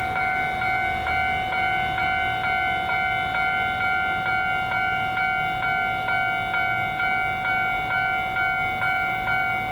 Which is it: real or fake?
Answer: real